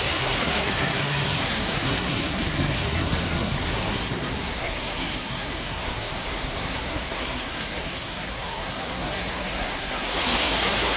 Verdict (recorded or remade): remade